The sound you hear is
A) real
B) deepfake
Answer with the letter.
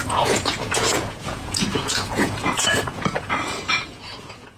B